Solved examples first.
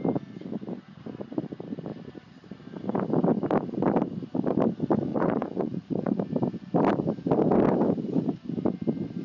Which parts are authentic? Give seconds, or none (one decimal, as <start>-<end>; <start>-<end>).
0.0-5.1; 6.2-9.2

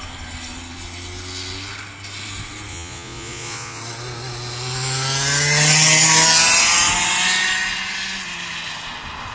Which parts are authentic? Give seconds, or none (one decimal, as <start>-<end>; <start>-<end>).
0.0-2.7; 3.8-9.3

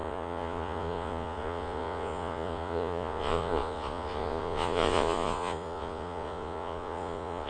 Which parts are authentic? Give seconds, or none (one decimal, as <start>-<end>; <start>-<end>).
none

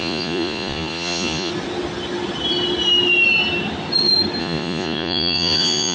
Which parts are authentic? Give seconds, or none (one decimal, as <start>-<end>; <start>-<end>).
1.5-4.4

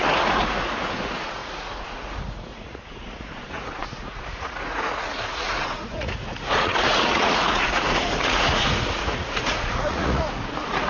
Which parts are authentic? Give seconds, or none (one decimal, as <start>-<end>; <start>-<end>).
none

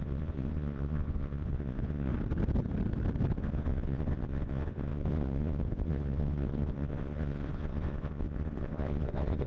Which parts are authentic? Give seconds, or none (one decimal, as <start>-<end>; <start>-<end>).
2.1-3.4

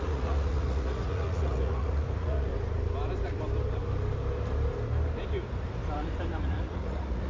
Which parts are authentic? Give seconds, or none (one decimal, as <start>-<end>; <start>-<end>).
2.5-6.4

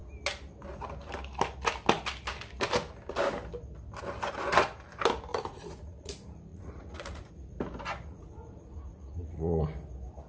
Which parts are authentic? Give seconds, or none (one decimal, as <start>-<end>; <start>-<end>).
0.0-5.3; 6.1-6.5; 7.3-8.1; 9.6-10.3